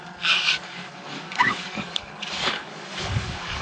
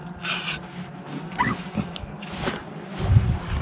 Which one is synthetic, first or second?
first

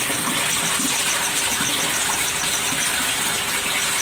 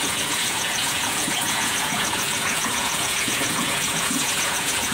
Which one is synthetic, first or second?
second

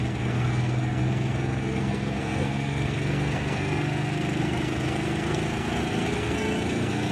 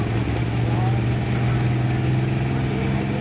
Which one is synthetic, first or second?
first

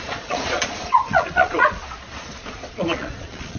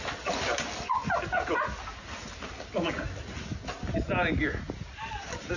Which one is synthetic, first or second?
first